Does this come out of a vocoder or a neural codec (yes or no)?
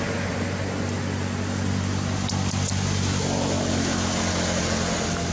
no